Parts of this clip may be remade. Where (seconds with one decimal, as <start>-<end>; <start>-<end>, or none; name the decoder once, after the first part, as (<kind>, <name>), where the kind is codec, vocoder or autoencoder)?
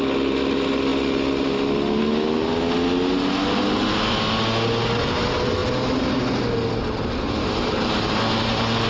none